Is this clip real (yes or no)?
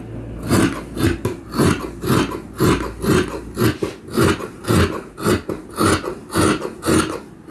yes